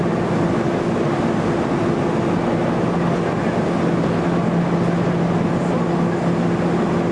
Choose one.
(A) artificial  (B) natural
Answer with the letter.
B